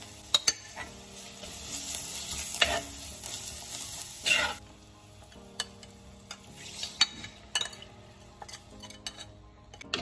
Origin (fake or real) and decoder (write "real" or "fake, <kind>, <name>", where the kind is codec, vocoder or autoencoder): real